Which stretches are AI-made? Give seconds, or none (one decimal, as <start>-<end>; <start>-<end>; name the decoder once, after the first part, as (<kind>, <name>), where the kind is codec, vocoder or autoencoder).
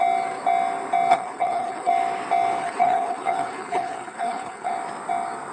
1.1-1.9 (codec, HILCodec); 2.6-4.7